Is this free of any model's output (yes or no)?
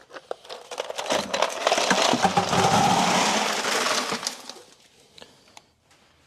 yes